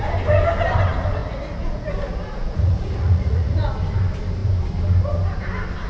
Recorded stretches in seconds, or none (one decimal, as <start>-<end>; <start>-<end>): 0.0-1.2; 1.9-2.4; 3.7-5.9